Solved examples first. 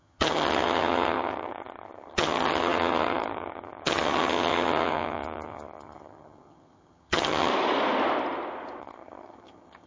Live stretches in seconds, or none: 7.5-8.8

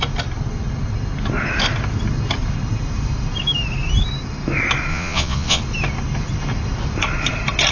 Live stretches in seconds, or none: 0.0-4.9; 5.6-7.7

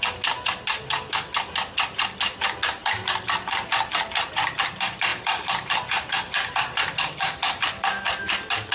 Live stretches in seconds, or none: 0.0-2.8; 3.7-5.1; 7.6-8.7

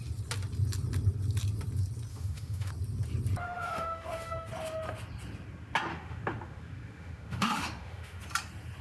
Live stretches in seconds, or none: 0.0-2.1; 2.7-3.4; 4.5-5.9; 8.2-8.8

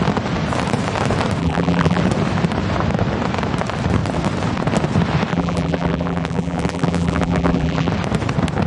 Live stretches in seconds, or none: 0.0-1.4; 2.0-5.3; 7.9-8.7

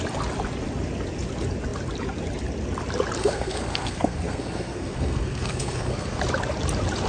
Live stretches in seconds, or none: 0.0-3.2; 6.2-7.1

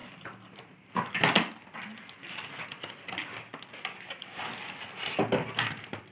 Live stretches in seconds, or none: 1.1-3.2; 3.7-6.1